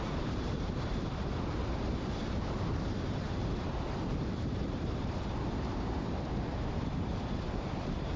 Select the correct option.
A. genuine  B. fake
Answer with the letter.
B